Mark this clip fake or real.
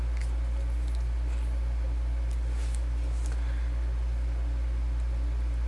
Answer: real